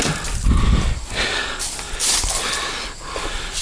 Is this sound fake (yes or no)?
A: no